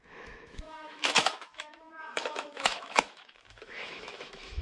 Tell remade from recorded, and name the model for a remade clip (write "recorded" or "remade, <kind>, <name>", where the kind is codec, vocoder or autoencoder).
remade, autoencoder, DAC-VAE